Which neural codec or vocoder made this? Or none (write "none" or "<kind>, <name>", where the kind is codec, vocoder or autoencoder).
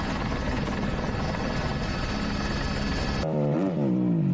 none